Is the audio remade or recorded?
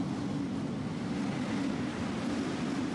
recorded